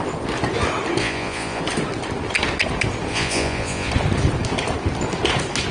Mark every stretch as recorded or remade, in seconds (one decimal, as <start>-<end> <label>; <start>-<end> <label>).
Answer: 0.0-1.0 recorded; 1.0-1.6 remade; 1.6-3.1 recorded; 3.1-3.9 remade; 3.9-5.7 recorded